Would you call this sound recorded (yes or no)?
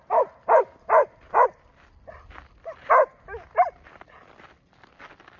yes